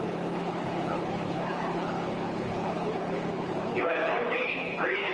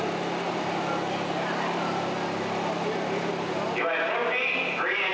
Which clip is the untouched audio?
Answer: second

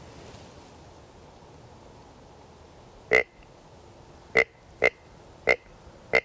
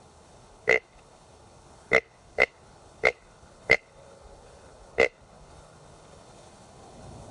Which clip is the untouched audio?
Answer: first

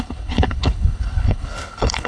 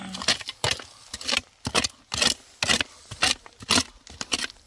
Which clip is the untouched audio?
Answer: second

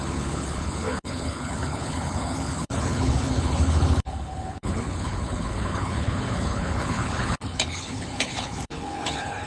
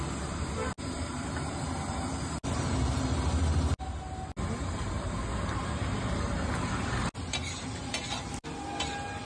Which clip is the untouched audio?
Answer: second